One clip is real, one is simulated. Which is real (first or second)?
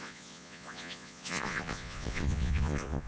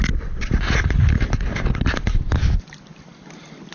second